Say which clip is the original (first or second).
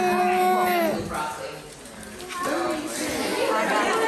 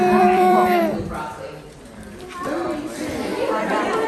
first